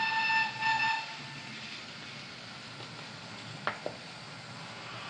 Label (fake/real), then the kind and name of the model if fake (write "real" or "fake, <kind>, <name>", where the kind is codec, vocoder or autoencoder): real